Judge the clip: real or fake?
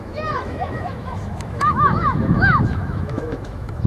fake